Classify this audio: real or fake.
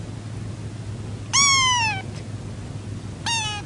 real